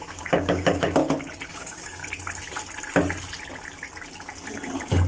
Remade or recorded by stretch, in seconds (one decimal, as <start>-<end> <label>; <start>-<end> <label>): 0.0-1.0 remade; 1.0-1.5 recorded; 1.5-2.0 remade; 2.0-5.1 recorded

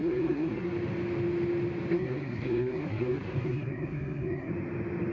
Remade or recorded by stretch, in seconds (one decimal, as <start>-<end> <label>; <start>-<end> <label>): 0.0-0.7 remade; 0.7-1.9 recorded; 1.9-4.5 remade; 4.5-5.1 recorded